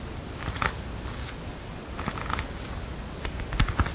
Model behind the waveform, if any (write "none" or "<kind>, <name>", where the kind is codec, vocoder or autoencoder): none